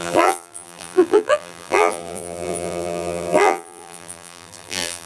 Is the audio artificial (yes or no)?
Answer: yes